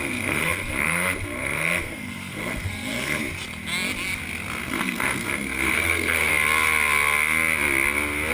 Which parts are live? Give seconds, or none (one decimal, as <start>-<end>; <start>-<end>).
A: 3.2-4.6; 6.3-8.3